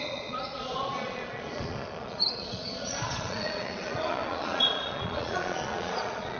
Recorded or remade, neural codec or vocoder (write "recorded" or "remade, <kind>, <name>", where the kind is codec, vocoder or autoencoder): remade, vocoder, Vocos